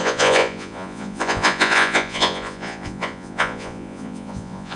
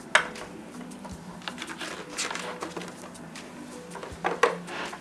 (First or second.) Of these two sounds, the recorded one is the second